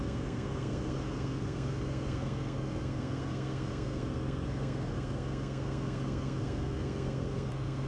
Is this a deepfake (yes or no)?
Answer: yes